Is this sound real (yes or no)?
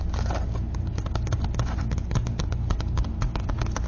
yes